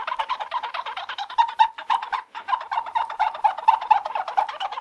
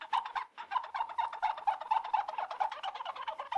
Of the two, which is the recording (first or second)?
second